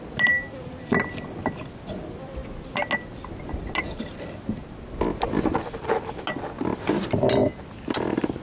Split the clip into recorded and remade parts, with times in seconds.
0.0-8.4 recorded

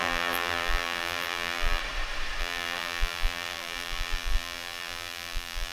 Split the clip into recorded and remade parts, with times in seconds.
0.0-1.8 remade; 1.8-2.4 recorded; 2.4-5.7 remade

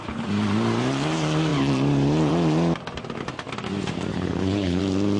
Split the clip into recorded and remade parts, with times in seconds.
0.0-4.1 recorded; 4.1-4.8 remade; 4.8-5.2 recorded

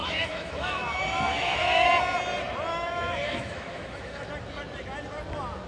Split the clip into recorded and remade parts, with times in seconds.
0.0-1.9 remade; 1.9-2.7 recorded; 2.7-4.3 remade; 4.3-5.7 recorded